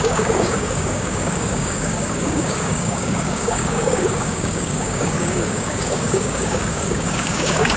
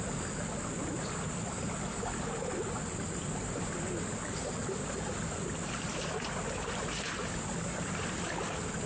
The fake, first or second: first